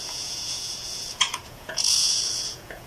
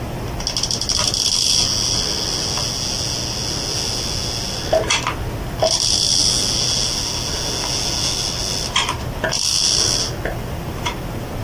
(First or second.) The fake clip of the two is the first